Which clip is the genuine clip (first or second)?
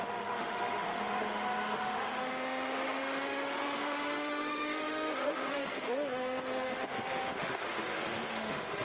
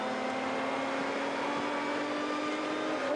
second